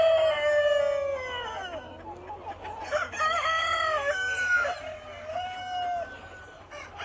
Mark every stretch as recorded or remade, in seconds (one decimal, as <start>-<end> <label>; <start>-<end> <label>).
0.0-7.0 recorded